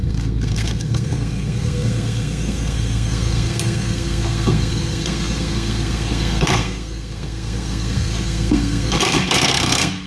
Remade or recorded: remade